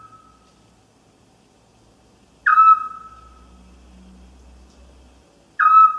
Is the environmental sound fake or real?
real